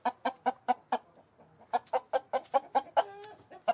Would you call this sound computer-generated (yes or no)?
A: no